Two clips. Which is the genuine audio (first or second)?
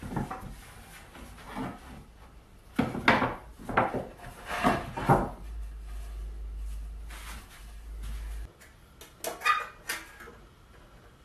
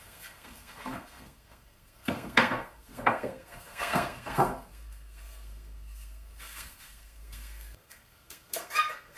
first